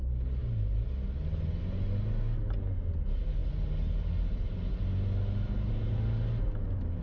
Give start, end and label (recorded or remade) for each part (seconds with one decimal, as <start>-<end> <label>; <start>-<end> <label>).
0.0-7.0 recorded